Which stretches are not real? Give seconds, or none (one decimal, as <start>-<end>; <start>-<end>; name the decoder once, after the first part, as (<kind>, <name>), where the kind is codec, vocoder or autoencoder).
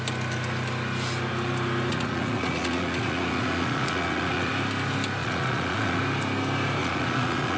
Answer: 1.9-4.5 (vocoder, Vocos); 5.2-6.0; 6.8-7.6